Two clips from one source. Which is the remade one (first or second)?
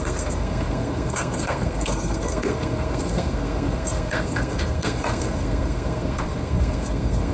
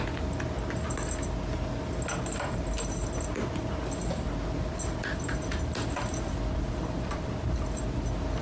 first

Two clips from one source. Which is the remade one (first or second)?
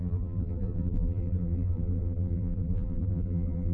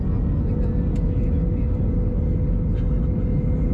first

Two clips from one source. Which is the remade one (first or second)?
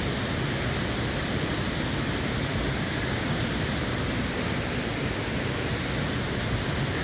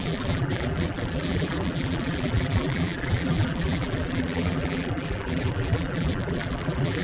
second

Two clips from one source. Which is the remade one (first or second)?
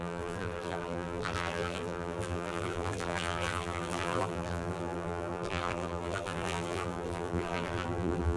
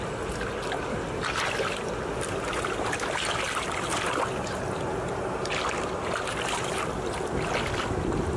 first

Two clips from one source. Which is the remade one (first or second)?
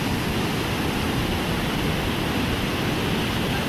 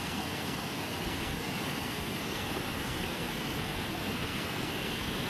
second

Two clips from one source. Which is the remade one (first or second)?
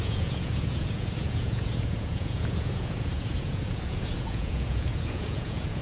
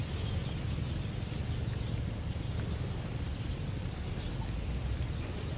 first